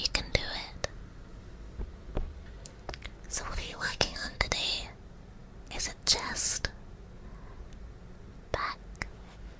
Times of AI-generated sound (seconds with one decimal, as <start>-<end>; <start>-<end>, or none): 3.5-4.5